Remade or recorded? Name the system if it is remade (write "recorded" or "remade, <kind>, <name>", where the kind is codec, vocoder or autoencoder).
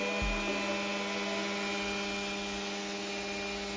recorded